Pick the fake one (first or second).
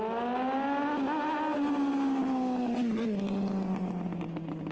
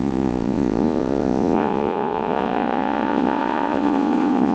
second